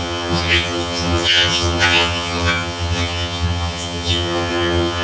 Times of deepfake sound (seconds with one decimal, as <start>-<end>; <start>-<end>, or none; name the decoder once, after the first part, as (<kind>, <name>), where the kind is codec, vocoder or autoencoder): 0.0-5.0 (vocoder, HiFi-GAN)